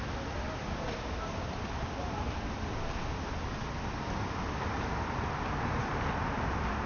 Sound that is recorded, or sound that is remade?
recorded